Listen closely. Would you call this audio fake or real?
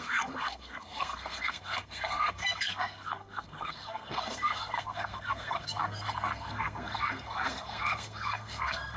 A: fake